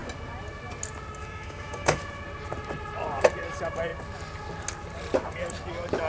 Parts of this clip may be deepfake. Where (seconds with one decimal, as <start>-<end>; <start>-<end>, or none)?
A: 1.2-2.0

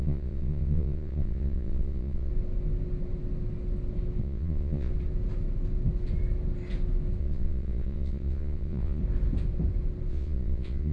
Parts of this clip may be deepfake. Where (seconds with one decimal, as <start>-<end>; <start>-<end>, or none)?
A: 0.0-2.3; 4.2-4.9; 7.2-9.0; 10.1-10.9

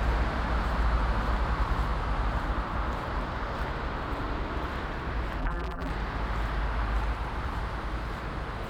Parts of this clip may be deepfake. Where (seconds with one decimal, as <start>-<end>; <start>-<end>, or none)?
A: 5.4-5.9

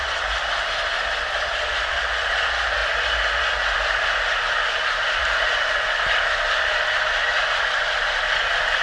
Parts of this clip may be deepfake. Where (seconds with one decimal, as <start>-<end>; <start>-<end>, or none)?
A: none